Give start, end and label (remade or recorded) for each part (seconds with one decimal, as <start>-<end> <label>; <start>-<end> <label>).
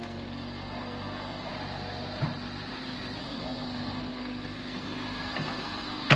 0.0-1.5 remade; 1.5-3.2 recorded; 3.2-6.2 remade